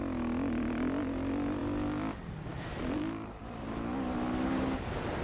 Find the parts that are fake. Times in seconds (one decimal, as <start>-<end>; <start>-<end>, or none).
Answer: none